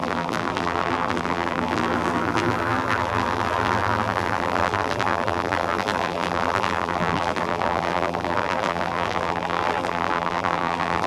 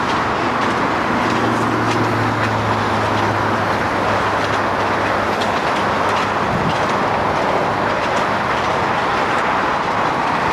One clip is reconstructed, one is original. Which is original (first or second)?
second